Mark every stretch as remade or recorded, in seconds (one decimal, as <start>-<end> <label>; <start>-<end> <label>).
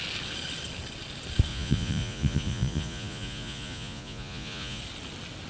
0.0-1.5 recorded; 1.5-4.8 remade; 4.8-5.5 recorded